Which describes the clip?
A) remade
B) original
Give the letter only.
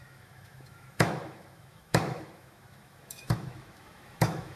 A